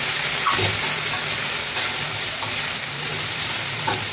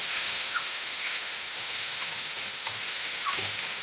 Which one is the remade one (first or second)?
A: second